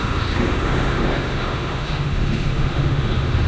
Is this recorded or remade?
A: remade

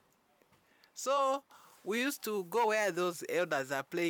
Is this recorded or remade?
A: remade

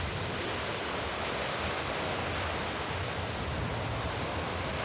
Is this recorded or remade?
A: recorded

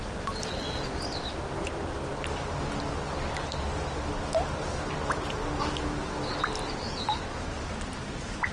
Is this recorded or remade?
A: recorded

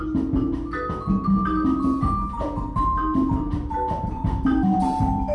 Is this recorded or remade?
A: recorded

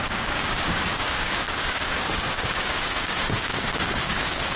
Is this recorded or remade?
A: remade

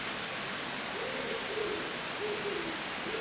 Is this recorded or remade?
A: recorded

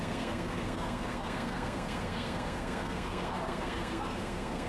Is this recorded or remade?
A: remade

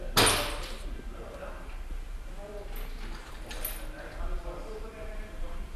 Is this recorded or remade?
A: recorded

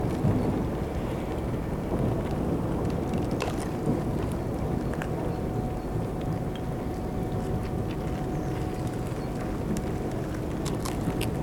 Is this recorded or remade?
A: recorded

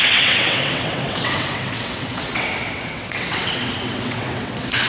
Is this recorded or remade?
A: remade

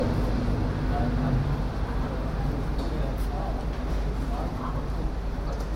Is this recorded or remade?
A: recorded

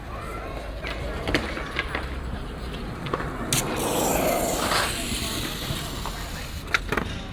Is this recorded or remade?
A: recorded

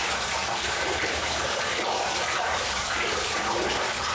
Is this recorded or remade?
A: remade